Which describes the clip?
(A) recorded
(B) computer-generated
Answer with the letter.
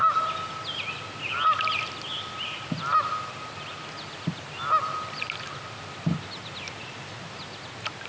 A